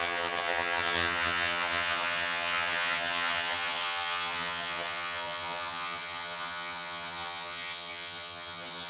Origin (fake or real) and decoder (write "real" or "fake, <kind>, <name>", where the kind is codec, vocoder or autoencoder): fake, vocoder, HiFi-GAN